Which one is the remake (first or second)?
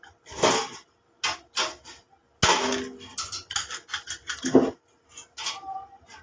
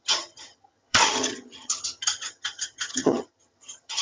second